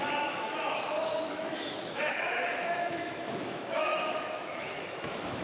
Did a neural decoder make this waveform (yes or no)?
yes